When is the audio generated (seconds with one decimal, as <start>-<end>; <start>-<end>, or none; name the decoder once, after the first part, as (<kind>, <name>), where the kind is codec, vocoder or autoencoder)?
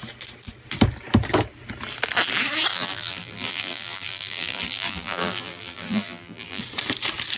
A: 2.7-6.6 (vocoder, BigVGAN v2)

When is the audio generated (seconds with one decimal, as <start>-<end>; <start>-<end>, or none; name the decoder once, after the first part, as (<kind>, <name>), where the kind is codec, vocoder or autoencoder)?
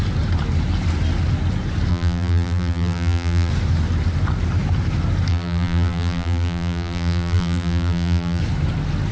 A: 1.9-3.5 (vocoder, BigVGAN v2); 5.3-8.4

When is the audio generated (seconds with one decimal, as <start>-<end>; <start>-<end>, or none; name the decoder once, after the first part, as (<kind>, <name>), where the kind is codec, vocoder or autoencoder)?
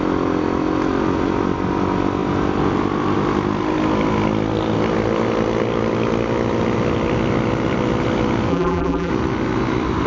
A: 8.5-9.1 (vocoder, BigVGAN v2)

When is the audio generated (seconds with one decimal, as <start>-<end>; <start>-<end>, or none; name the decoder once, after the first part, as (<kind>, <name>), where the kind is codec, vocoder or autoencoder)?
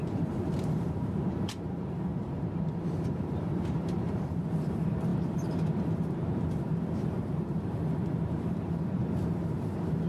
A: 0.0-9.0 (vocoder, BigVGAN v2); 9.7-10.1